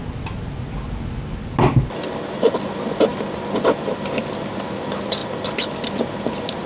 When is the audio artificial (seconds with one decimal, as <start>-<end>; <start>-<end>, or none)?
none